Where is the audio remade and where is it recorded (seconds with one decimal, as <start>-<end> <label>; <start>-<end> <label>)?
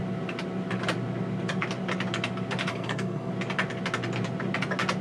0.0-2.7 recorded; 2.7-3.3 remade; 3.3-5.0 recorded